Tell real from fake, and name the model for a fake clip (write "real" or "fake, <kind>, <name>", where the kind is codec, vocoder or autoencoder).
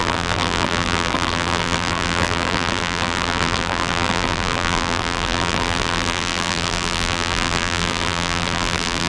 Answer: fake, vocoder, BigVGAN v2